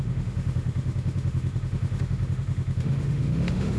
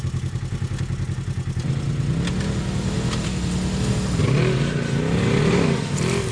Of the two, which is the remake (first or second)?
first